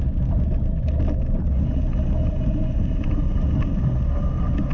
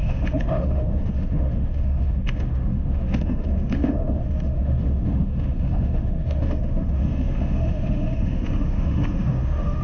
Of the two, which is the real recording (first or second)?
first